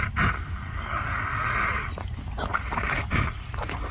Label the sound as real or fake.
real